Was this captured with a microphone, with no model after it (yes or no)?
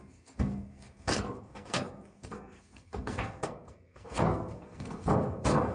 no